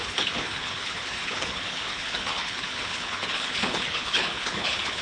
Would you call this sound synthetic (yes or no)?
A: yes